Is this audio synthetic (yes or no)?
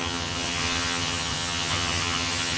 yes